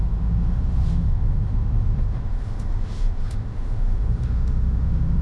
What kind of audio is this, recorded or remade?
remade